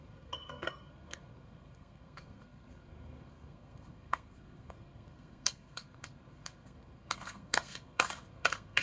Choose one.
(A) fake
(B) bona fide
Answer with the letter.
A